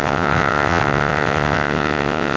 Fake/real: fake